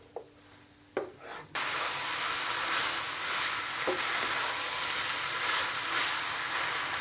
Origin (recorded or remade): recorded